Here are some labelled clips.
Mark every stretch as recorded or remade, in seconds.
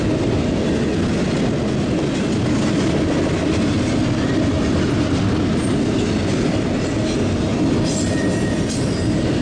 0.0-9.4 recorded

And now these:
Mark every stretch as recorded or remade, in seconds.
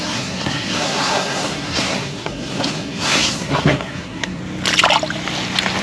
0.0-4.4 remade; 4.4-5.8 recorded